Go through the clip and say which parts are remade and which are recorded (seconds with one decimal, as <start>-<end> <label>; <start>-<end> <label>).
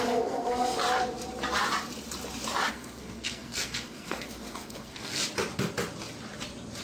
0.0-0.8 remade; 0.8-2.7 recorded; 2.7-5.2 remade; 5.2-6.8 recorded